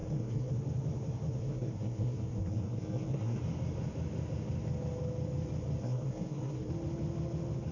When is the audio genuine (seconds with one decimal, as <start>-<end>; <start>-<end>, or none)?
0.5-1.4; 3.4-5.8; 6.7-7.7